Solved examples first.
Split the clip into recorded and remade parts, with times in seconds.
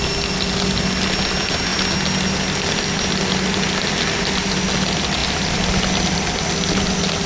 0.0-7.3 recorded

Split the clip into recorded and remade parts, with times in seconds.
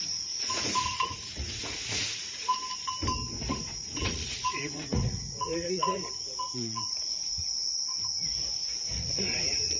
0.0-2.5 remade; 2.5-3.5 recorded; 3.5-9.8 remade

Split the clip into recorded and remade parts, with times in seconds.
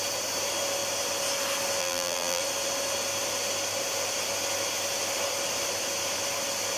0.0-1.8 recorded; 1.8-2.4 remade; 2.4-6.8 recorded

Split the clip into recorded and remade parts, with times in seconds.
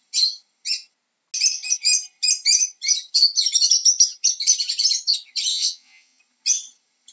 0.0-5.5 recorded; 5.5-6.2 remade; 6.2-7.1 recorded